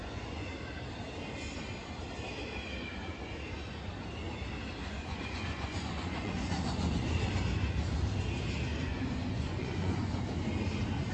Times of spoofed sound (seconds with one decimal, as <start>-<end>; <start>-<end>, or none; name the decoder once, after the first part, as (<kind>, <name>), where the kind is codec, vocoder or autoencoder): 0.0-0.5 (vocoder, Vocos); 2.9-3.9; 4.8-7.2; 8.7-10.2